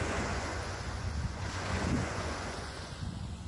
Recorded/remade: remade